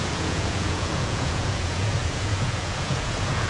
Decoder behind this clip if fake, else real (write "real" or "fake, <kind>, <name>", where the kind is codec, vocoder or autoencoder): fake, vocoder, Vocos